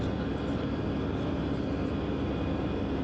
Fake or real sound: real